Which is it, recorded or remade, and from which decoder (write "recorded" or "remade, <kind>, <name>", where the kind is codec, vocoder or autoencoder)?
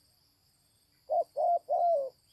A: recorded